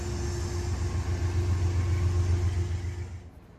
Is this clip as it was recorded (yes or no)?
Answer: yes